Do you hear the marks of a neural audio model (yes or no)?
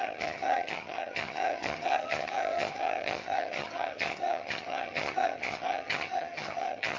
yes